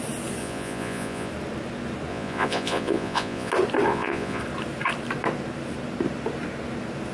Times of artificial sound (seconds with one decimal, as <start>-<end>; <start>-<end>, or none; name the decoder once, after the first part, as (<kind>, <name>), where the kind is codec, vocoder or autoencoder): 0.4-1.3 (vocoder, Vocos); 2.1-3.5; 3.9-4.4

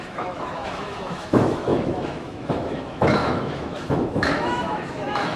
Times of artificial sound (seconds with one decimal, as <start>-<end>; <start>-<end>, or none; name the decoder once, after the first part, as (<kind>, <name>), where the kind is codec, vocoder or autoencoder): 0.0-5.4 (autoencoder, DAC-VAE)

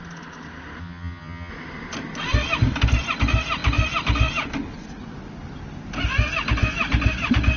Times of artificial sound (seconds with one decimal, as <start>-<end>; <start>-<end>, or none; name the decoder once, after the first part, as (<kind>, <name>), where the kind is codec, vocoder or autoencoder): 0.8-1.5 (vocoder, HiFi-GAN)

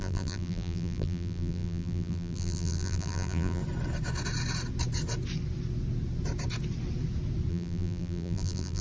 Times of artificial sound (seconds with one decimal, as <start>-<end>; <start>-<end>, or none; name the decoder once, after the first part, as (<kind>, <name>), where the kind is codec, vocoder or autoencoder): 0.0-3.6 (vocoder, BigVGAN v2); 7.5-8.8

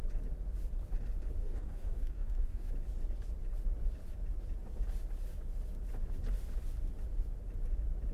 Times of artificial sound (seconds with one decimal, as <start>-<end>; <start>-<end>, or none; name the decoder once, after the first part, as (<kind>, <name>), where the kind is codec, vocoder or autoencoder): 1.4-2.7 (codec, DAC)

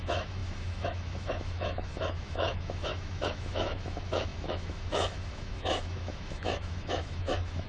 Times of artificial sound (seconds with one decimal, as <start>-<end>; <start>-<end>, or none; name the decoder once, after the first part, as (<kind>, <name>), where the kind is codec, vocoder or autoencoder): 0.0-7.7 (autoencoder, DAC-VAE)

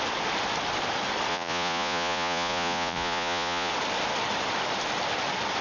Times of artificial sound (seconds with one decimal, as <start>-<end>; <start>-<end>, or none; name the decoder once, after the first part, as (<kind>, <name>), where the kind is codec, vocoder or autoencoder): 1.3-3.7 (vocoder, Vocos)

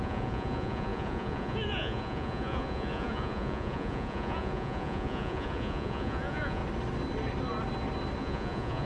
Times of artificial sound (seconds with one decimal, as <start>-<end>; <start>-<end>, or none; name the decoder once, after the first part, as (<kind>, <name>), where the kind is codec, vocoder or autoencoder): 0.0-6.6 (vocoder, Vocos); 8.2-8.9